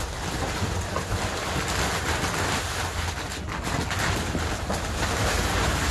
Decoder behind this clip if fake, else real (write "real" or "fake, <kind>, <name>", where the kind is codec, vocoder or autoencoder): real